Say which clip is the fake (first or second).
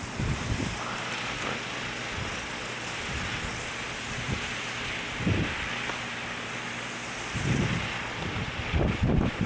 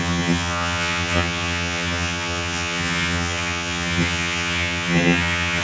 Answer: second